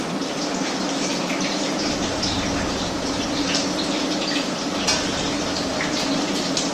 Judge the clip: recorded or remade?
remade